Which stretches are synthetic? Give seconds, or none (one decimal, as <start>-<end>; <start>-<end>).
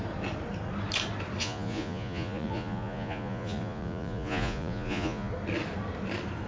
1.4-5.3